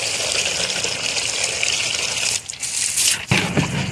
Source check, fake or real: real